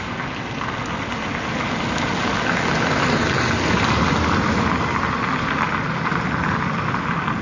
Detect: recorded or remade recorded